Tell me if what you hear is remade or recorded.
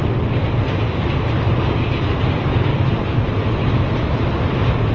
recorded